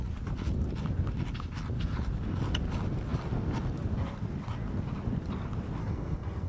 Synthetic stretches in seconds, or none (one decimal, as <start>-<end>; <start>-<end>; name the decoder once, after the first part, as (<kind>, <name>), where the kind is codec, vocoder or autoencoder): 5.8-6.5 (codec, SNAC)